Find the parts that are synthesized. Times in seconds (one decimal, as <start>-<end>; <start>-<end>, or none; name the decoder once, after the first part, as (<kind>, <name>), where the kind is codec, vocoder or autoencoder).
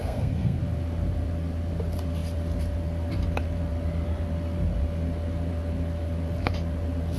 0.0-0.6 (codec, SNAC)